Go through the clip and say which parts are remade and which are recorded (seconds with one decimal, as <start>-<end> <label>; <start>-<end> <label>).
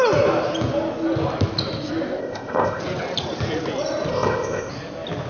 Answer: 0.0-2.2 recorded; 2.2-2.8 remade; 2.8-4.1 recorded; 4.1-4.7 remade; 4.7-5.3 recorded